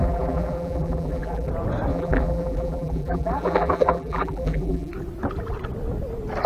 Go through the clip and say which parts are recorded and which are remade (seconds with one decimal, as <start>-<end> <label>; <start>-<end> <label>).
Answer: 0.0-1.5 remade; 1.5-1.9 recorded; 1.9-4.9 remade; 4.9-6.5 recorded